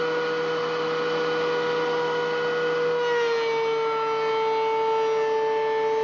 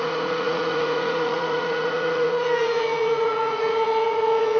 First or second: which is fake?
second